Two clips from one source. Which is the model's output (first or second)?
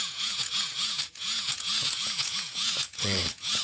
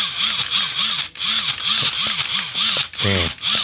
first